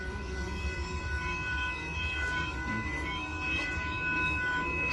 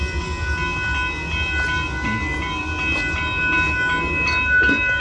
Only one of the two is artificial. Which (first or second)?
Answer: first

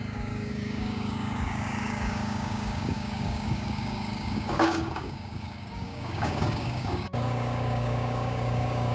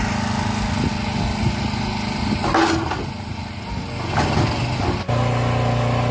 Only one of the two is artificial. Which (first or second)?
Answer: first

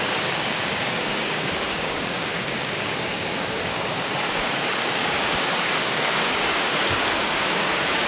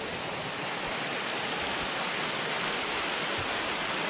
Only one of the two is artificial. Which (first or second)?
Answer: first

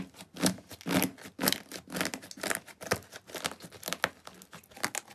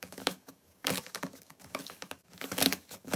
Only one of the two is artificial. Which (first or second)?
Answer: second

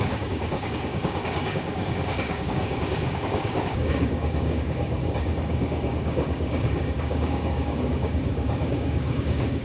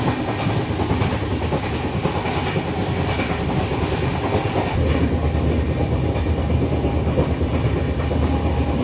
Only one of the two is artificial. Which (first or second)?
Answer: first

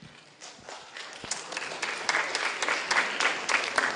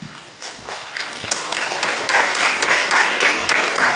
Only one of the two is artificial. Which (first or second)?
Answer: second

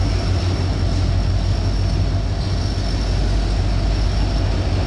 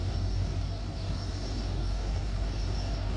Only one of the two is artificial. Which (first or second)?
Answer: second